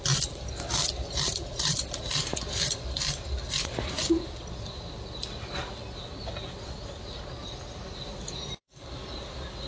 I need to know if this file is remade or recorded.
recorded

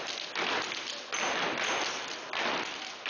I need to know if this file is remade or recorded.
recorded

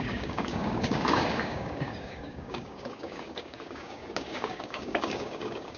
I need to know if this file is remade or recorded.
remade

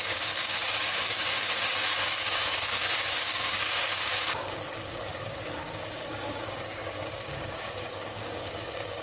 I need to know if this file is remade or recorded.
remade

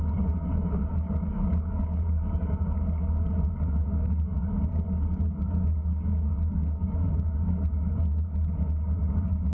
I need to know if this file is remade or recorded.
remade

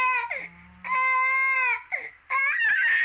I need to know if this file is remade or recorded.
recorded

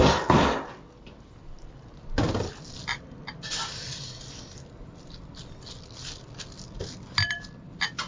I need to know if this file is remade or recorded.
recorded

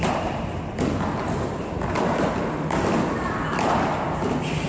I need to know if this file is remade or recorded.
recorded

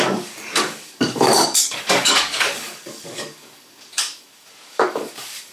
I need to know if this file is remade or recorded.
remade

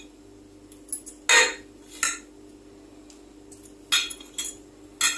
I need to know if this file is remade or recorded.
recorded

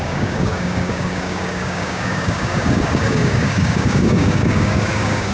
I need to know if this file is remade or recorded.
remade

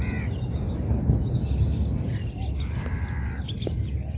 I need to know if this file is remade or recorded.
recorded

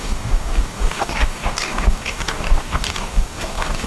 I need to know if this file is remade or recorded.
remade